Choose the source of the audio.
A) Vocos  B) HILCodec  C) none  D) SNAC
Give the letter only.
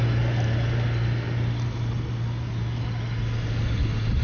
C